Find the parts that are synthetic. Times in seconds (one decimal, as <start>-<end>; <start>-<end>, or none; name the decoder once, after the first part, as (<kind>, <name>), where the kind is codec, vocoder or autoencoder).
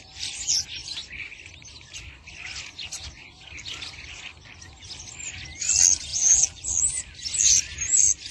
6.1-6.7 (vocoder, BigVGAN v2)